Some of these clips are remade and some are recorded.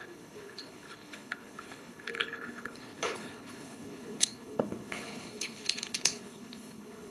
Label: remade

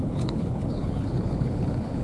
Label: remade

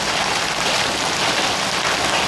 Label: recorded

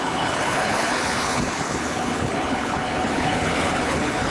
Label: remade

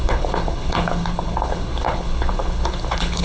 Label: remade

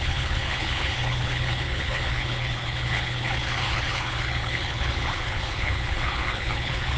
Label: remade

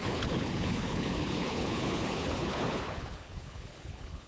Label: remade